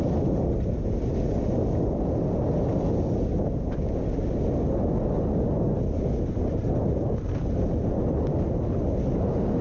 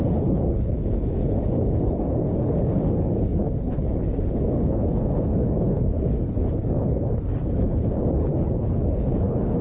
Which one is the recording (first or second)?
first